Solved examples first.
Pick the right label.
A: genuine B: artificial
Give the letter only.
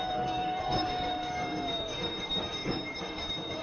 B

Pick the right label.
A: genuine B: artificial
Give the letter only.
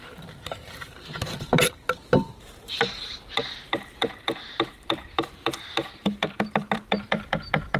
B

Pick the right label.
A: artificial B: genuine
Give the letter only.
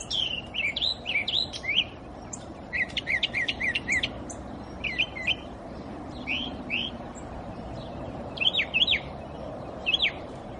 A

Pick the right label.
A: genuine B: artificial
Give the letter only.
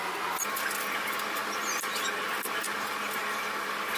A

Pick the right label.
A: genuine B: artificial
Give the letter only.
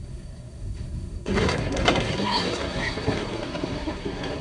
B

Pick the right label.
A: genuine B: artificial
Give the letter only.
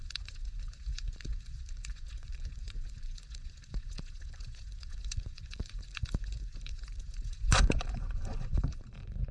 B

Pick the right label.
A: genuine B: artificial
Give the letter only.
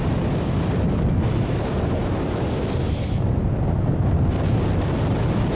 A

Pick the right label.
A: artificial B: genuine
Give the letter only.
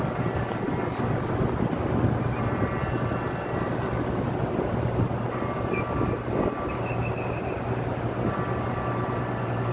B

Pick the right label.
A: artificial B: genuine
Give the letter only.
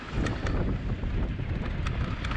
B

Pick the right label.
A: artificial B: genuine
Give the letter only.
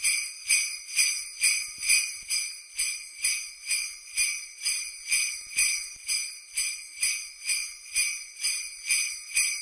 B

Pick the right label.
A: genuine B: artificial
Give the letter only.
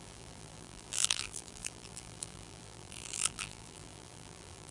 B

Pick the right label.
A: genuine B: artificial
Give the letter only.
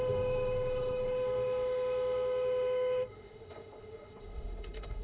B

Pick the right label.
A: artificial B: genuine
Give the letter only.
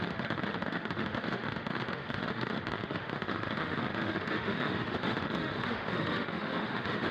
A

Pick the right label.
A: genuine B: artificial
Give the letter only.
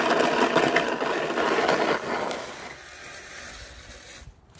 A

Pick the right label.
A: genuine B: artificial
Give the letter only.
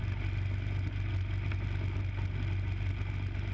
A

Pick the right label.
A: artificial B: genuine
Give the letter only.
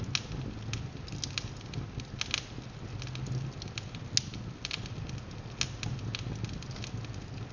B